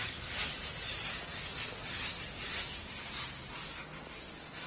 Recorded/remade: recorded